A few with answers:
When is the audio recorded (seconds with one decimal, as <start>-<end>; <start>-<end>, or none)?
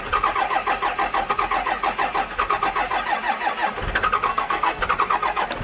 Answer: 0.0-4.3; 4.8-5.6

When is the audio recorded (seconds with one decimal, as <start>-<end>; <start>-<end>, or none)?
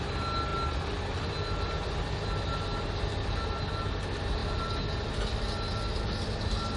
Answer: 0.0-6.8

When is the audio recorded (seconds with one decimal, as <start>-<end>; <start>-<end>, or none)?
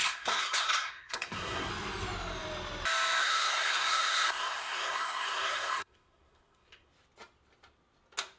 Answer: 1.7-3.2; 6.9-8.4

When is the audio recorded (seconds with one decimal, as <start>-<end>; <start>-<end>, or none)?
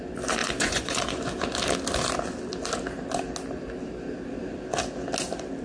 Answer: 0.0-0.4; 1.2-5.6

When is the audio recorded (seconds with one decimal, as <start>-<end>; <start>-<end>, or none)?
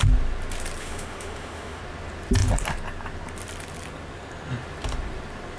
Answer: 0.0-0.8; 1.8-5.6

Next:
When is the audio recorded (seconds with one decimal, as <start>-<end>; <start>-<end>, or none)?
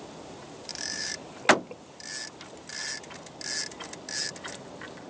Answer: 0.0-0.7; 1.4-5.1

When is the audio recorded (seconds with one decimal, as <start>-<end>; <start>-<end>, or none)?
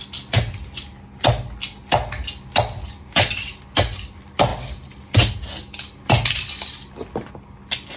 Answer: 0.0-8.0